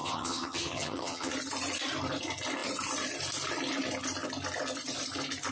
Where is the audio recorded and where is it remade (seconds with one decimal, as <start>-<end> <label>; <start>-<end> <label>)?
0.0-1.3 remade; 1.3-5.5 recorded